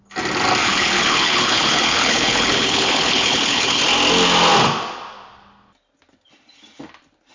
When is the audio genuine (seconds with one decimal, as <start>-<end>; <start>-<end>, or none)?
0.0-0.6; 3.8-7.3